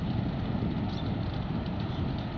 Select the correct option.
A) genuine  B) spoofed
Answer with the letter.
A